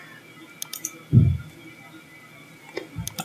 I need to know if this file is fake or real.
real